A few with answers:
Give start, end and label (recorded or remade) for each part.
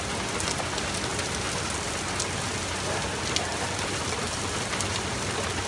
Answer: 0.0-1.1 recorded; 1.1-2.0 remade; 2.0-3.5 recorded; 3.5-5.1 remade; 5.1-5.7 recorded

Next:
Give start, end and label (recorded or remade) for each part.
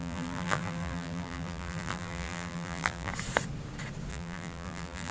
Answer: 0.0-3.1 remade; 3.1-4.1 recorded; 4.1-5.1 remade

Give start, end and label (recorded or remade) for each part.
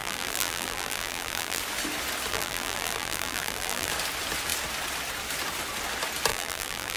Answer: 0.0-1.6 remade; 1.6-2.3 recorded; 2.3-3.9 remade; 3.9-6.3 recorded; 6.3-7.0 remade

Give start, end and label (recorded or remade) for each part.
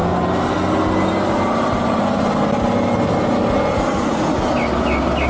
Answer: 0.0-3.4 recorded; 3.4-4.4 remade; 4.4-5.3 recorded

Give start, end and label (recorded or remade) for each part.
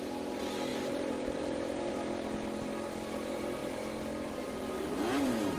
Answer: 0.0-0.7 recorded; 0.7-1.9 remade; 1.9-5.6 recorded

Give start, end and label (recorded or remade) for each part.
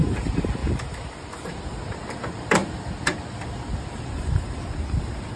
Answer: 0.0-2.6 remade; 2.6-4.0 recorded; 4.0-5.4 remade